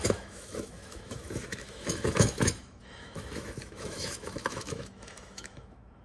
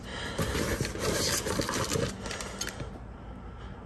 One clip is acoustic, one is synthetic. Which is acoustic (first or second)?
second